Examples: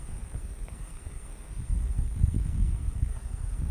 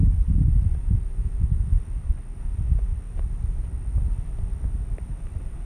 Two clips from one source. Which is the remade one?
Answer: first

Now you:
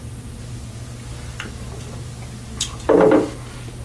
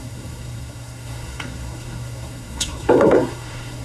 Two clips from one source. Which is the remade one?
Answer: second